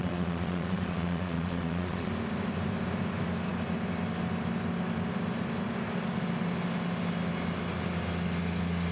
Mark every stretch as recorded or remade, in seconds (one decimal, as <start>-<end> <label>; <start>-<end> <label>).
0.0-2.1 remade; 2.1-8.9 recorded